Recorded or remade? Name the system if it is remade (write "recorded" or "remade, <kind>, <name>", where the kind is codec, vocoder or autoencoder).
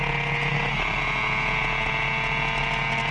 recorded